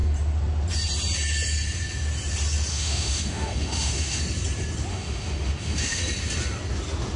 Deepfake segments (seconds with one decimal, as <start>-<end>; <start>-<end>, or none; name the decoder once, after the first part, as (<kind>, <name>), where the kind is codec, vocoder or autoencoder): 2.7-4.2 (autoencoder, DAC-VAE); 4.9-6.0